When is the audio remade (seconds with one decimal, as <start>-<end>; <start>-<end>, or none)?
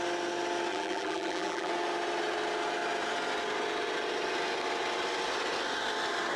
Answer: 0.7-1.7